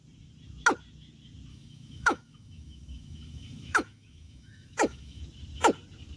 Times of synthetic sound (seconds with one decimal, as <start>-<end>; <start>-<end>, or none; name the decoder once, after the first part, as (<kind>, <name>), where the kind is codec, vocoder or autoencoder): 1.5-5.2 (autoencoder, DAC-VAE)

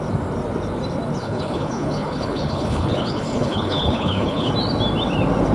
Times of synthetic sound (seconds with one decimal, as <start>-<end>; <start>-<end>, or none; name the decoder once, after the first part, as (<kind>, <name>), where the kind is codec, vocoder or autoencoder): 1.2-4.5 (codec, HILCodec)

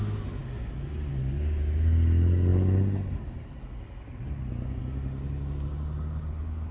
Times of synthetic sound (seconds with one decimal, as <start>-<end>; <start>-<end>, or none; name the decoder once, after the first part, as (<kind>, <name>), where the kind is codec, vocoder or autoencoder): none